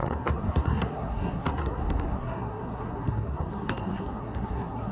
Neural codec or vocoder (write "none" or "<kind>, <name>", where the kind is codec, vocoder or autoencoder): codec, SNAC